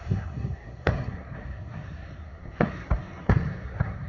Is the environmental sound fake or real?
fake